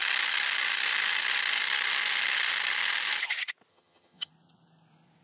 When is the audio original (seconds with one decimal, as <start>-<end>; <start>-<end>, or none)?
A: 0.0-3.7; 4.3-5.2